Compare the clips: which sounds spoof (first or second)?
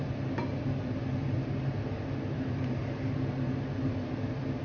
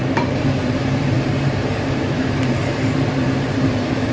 second